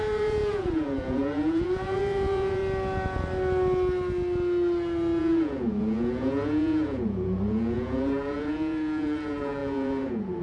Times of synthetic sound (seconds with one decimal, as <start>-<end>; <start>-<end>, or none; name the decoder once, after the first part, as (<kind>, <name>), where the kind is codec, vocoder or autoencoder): 0.0-2.6 (vocoder, Vocos); 5.2-10.4